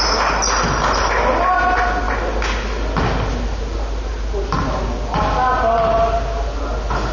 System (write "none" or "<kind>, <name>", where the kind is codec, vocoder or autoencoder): none